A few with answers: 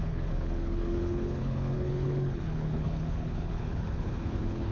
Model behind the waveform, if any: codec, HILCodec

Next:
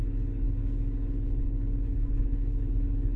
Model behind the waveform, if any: codec, HILCodec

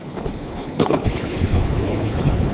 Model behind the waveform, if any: codec, HILCodec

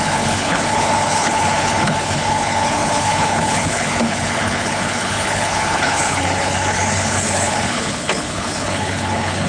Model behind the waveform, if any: codec, HILCodec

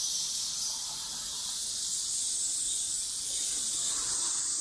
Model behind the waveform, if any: none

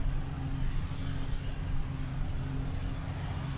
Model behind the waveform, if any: none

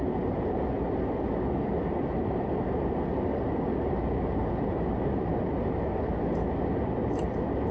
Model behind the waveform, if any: none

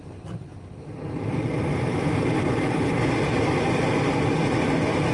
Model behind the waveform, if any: none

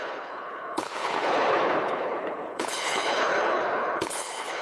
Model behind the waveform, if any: codec, HILCodec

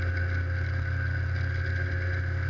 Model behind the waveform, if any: none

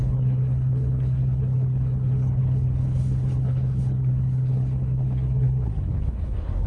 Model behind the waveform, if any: codec, HILCodec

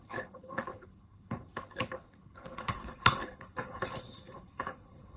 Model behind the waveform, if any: codec, HILCodec